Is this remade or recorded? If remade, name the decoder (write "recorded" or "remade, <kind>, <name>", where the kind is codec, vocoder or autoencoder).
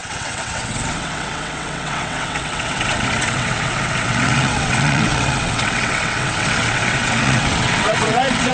remade, vocoder, WaveNeXt